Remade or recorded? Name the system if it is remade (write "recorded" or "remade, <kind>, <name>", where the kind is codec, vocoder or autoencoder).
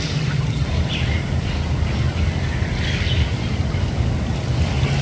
recorded